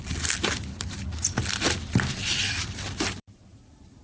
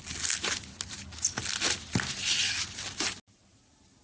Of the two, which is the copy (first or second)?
first